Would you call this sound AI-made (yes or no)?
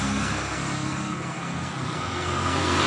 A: yes